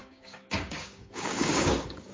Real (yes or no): no